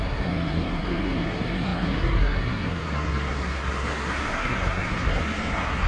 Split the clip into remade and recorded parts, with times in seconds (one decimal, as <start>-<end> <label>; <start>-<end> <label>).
0.0-5.9 remade